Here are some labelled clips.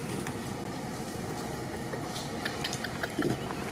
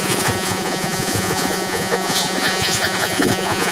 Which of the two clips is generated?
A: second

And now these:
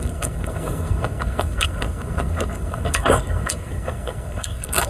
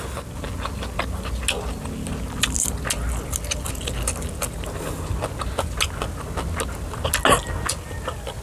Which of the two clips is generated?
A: first